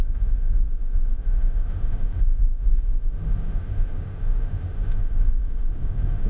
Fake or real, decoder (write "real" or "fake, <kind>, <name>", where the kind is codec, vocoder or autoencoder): fake, autoencoder, DAC-VAE